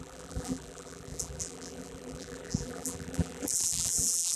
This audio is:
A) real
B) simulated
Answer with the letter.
B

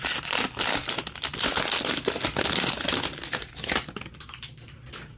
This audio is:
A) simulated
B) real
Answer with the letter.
B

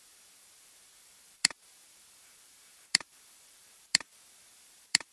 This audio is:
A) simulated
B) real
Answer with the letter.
A